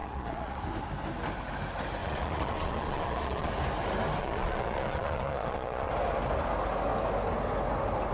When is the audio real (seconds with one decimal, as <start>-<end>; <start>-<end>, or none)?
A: 0.6-2.0; 3.5-4.2; 5.9-8.1